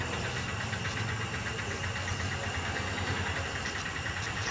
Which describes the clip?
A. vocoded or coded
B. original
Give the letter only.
B